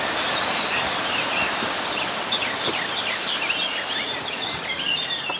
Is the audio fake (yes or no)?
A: no